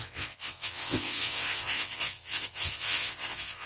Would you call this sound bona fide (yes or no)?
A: no